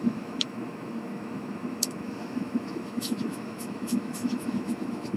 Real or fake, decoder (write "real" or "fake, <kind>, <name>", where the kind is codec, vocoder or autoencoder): fake, autoencoder, DAC-VAE